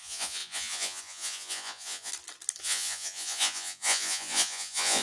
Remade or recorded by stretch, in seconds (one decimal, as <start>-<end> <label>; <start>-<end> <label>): 0.0-2.1 remade; 2.1-2.6 recorded; 2.6-5.0 remade